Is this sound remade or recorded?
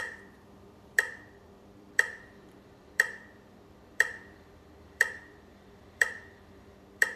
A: remade